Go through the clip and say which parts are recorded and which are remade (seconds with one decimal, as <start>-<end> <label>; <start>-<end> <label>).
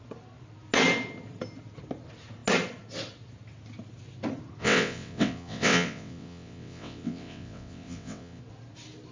0.0-4.6 recorded; 4.6-8.4 remade; 8.4-9.1 recorded